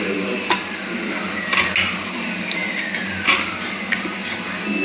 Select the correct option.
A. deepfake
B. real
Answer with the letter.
B